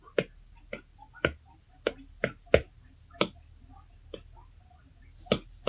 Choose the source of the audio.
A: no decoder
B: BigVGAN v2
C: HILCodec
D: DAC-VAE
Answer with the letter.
A